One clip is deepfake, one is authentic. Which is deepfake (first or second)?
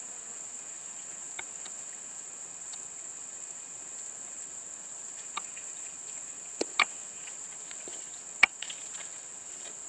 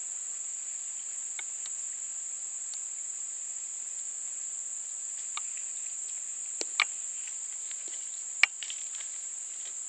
first